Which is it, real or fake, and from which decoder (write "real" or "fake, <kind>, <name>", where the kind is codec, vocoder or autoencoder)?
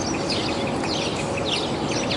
real